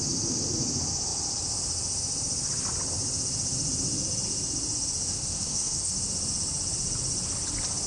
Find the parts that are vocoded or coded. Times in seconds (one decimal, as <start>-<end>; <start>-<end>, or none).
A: 5.1-5.9